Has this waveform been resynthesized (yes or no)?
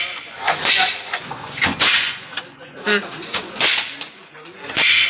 yes